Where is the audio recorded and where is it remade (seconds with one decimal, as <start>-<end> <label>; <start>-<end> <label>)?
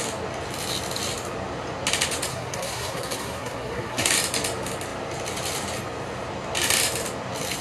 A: 0.0-2.3 recorded; 2.3-4.1 remade; 4.1-7.6 recorded